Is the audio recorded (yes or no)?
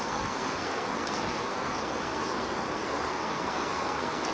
no